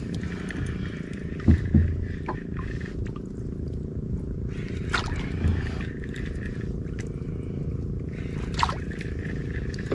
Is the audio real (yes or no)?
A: yes